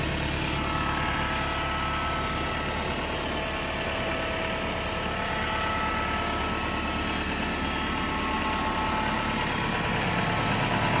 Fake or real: real